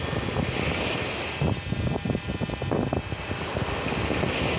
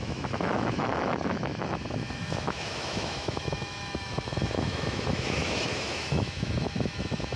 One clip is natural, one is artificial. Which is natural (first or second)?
first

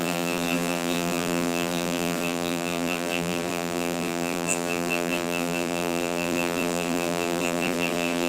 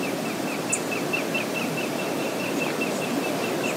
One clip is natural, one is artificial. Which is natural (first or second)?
second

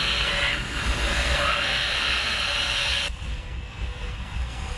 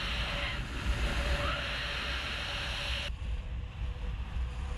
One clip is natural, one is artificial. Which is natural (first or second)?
second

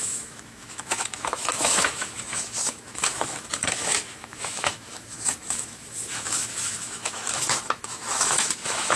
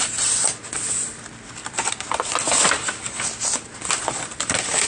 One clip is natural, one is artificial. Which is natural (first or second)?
second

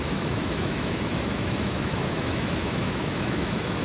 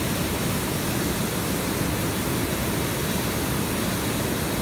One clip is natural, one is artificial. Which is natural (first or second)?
second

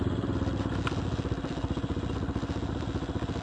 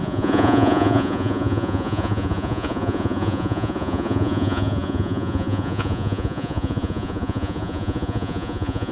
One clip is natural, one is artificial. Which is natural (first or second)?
first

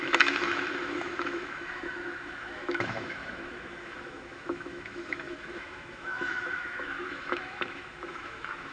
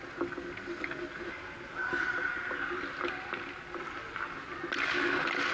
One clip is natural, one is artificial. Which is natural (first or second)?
second